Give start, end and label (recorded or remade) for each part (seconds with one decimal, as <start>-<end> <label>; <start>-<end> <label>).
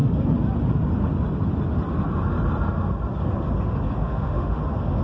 0.0-4.0 recorded; 4.0-4.6 remade; 4.6-5.0 recorded